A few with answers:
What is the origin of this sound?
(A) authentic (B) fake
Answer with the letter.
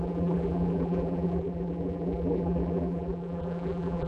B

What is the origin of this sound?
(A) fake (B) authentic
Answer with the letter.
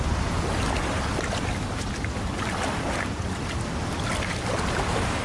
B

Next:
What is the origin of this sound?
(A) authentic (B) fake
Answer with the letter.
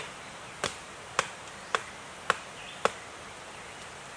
A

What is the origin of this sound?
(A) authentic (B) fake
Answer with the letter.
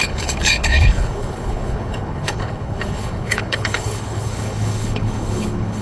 B